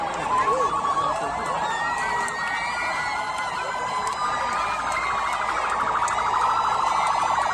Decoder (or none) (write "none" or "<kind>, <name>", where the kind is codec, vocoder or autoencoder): none